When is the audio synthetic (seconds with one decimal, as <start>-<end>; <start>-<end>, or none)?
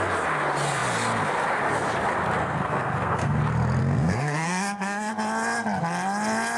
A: 2.4-3.4; 3.8-5.1